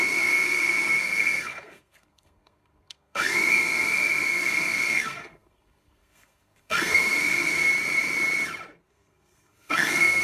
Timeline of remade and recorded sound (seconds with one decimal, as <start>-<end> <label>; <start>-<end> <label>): 0.0-7.7 remade; 7.7-8.9 recorded; 8.9-10.2 remade